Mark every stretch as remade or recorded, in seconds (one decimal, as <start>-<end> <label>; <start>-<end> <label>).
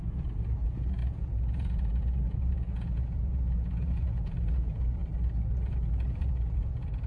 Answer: 0.0-5.0 remade; 5.0-6.1 recorded; 6.1-7.1 remade